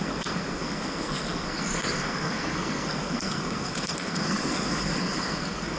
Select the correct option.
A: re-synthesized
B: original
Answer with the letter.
A